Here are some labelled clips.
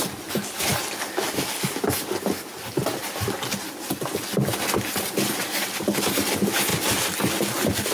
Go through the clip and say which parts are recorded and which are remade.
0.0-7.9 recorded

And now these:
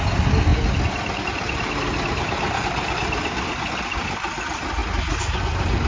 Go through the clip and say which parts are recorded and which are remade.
0.0-0.5 remade; 0.5-3.7 recorded; 3.7-4.8 remade; 4.8-5.4 recorded; 5.4-5.9 remade

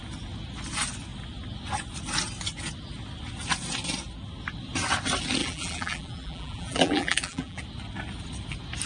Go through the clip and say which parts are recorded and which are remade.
0.0-5.4 recorded; 5.4-7.6 remade; 7.6-8.9 recorded

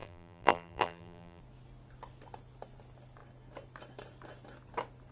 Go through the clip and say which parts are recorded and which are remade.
0.0-1.4 remade; 1.4-5.1 recorded

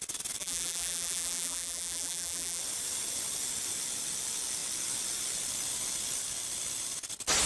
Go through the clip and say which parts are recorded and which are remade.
0.0-0.4 recorded; 0.4-2.6 remade; 2.6-7.5 recorded

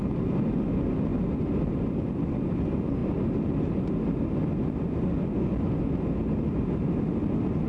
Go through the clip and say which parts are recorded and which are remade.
0.0-7.7 recorded

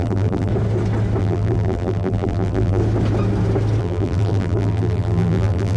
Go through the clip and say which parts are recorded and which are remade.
0.0-0.5 remade; 0.5-1.2 recorded; 1.2-2.8 remade; 2.8-3.8 recorded; 3.8-5.8 remade

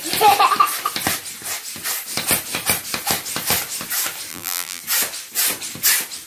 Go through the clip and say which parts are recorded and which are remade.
0.0-4.3 recorded; 4.3-4.8 remade; 4.8-6.3 recorded